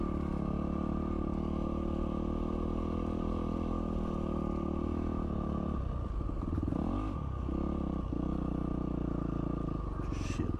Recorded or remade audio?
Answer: recorded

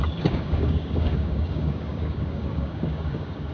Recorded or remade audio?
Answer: remade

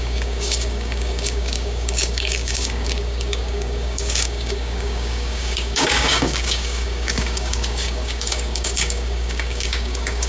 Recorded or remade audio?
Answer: remade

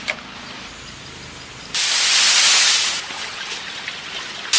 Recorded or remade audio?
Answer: recorded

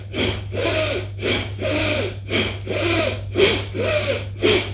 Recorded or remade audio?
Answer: recorded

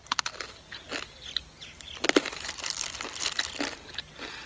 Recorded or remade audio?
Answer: recorded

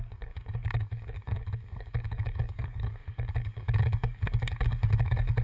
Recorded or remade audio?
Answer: remade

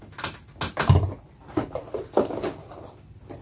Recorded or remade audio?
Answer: recorded